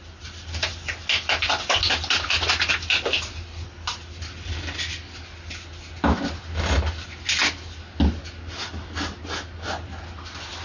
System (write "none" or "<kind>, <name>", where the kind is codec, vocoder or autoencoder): none